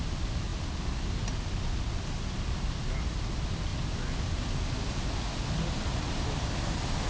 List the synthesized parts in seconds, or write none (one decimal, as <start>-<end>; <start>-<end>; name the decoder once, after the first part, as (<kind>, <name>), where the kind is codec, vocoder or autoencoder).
none